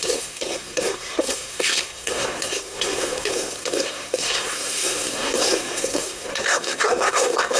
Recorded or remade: remade